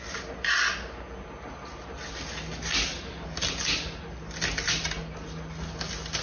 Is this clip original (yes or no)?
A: yes